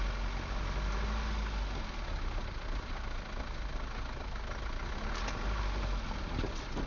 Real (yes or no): yes